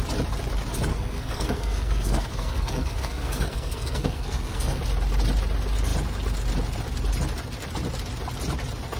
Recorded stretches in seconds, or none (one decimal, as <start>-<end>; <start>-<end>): 0.0-0.9; 4.8-9.0